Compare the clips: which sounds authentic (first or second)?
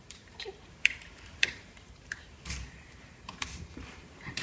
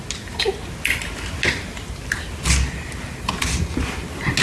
second